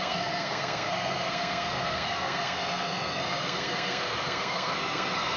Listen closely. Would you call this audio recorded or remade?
remade